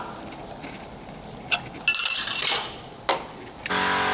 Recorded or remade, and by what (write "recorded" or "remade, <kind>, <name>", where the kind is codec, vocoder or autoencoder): recorded